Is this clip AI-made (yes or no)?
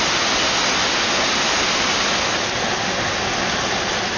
no